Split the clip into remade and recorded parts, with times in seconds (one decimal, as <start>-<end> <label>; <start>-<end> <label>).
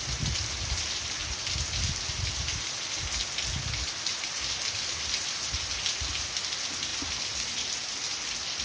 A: 0.0-6.9 recorded; 6.9-7.7 remade; 7.7-8.6 recorded